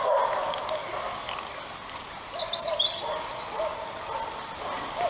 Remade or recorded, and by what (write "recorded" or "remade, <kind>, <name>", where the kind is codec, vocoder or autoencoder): recorded